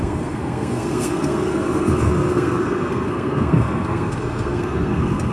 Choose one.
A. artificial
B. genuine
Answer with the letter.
A